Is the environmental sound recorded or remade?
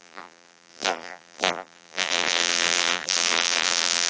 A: remade